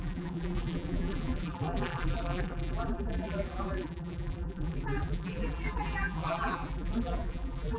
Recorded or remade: remade